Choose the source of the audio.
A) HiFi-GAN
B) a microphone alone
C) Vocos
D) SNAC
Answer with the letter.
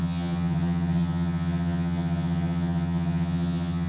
A